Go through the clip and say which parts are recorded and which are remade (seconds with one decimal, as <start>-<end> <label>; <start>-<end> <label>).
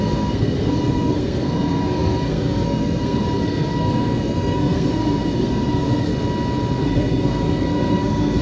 0.0-6.1 remade; 6.1-6.8 recorded; 6.8-8.4 remade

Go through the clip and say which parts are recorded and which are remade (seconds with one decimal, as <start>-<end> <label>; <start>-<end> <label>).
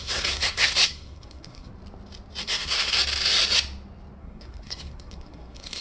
0.0-1.7 remade; 1.7-2.4 recorded; 2.4-3.0 remade; 3.0-4.2 recorded; 4.2-5.8 remade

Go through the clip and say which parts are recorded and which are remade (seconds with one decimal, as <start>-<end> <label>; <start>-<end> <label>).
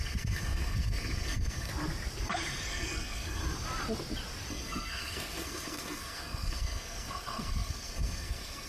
0.0-1.7 remade; 1.7-2.7 recorded; 2.7-3.4 remade; 3.4-4.5 recorded; 4.5-8.7 remade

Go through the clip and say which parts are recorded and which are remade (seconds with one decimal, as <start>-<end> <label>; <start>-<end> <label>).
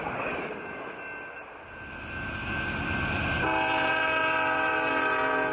0.0-5.5 recorded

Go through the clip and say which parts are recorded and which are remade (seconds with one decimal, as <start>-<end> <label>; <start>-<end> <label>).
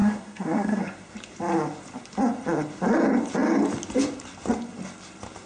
0.0-0.8 remade; 0.8-5.5 recorded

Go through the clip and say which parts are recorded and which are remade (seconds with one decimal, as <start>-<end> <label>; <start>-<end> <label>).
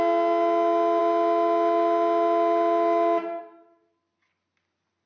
0.0-5.1 recorded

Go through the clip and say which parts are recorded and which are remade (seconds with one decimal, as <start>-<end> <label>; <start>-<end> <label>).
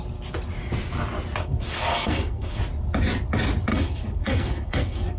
0.0-1.4 recorded; 1.4-2.6 remade; 2.6-3.7 recorded; 3.7-5.2 remade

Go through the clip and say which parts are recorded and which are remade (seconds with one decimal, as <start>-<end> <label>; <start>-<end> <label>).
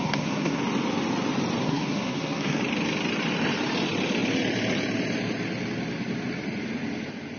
0.0-0.6 remade; 0.6-1.6 recorded; 1.6-2.6 remade; 2.6-7.4 recorded